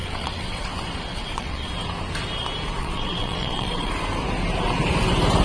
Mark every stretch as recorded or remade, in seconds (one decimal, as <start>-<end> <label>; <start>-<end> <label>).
0.0-0.7 remade; 0.7-1.1 recorded; 1.1-1.7 remade; 1.7-2.8 recorded; 2.8-3.9 remade; 3.9-5.4 recorded